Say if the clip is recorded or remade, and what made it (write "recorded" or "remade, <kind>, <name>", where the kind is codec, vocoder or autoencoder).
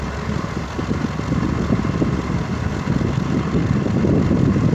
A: recorded